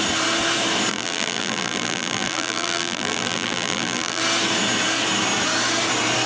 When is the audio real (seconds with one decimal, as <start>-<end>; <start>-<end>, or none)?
0.0-0.9; 4.2-6.3

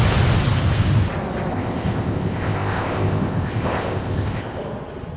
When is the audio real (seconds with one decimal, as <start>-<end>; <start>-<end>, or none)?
0.0-1.5; 4.6-5.2

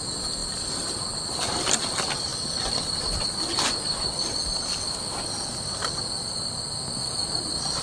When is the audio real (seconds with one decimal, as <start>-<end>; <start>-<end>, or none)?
0.0-7.8

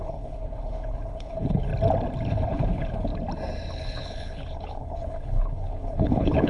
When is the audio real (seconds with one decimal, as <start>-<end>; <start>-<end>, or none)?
1.7-2.3; 3.1-3.7

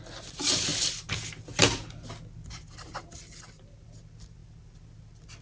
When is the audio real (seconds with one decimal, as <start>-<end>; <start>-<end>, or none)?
0.0-5.4

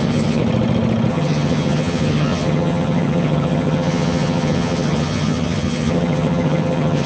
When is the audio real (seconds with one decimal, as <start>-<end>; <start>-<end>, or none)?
0.4-1.1